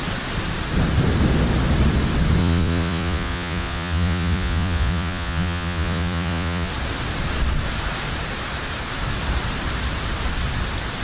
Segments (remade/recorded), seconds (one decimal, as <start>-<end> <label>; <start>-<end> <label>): 0.0-2.4 recorded; 2.4-6.7 remade; 6.7-11.0 recorded